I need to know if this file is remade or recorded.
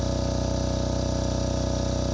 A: recorded